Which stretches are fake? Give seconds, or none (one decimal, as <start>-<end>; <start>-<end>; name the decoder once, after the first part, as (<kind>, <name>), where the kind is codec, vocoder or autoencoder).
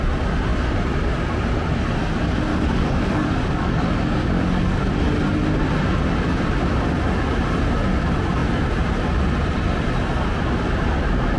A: 2.5-4.9 (codec, DAC)